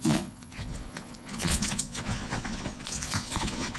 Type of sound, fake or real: fake